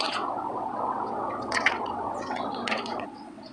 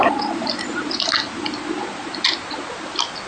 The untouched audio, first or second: second